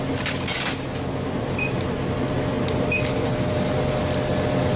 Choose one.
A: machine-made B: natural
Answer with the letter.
B